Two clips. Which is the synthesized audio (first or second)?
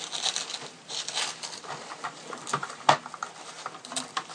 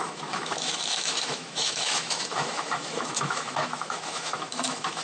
second